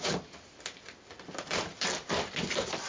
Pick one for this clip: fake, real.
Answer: real